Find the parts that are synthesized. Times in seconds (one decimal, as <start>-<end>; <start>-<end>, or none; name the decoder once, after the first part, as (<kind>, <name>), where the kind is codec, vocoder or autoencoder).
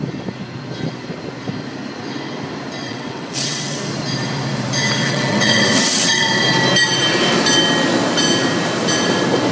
2.8-3.8 (vocoder, WaveNeXt); 5.0-6.4